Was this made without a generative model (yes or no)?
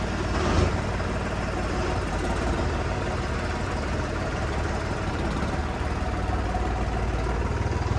yes